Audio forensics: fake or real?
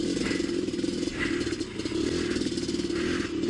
real